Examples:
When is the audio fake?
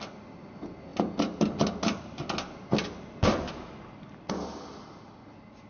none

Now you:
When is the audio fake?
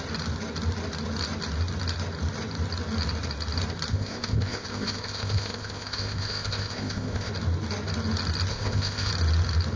3.9-7.3 (codec, ZipCodec); 8.5-9.1